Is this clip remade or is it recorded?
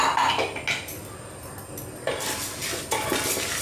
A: recorded